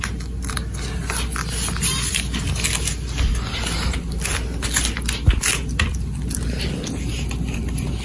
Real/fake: real